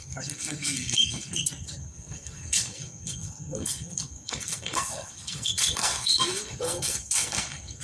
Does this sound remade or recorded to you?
remade